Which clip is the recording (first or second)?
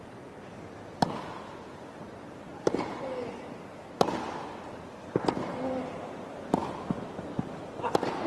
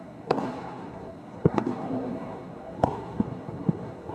first